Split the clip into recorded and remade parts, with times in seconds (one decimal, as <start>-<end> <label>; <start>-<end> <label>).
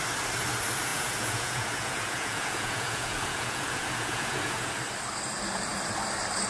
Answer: 0.0-0.9 recorded; 0.9-4.8 remade; 4.8-6.5 recorded